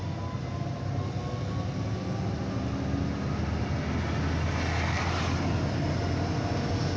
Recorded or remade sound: recorded